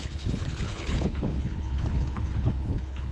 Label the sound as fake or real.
fake